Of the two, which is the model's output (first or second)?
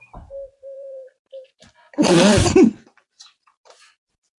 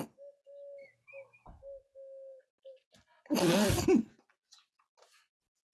first